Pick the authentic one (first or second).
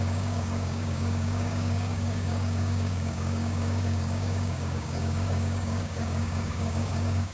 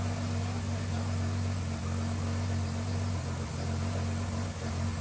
second